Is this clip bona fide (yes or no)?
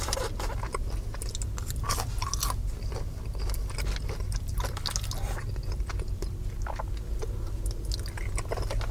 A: yes